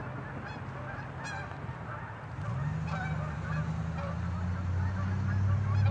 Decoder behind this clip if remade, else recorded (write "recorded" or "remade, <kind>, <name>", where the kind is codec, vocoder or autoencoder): recorded